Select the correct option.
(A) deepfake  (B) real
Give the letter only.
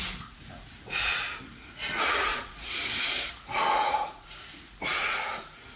A